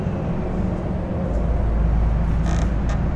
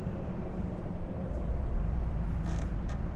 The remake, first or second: second